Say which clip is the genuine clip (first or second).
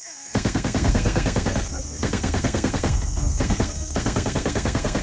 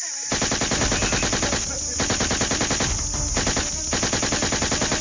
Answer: second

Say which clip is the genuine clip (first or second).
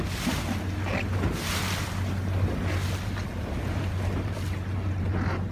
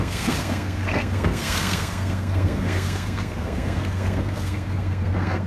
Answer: first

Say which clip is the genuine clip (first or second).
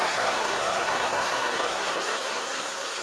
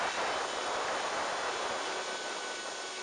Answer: second